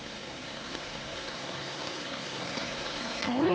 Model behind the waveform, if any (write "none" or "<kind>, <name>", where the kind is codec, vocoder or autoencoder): codec, SNAC